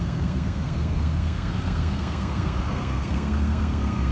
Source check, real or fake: fake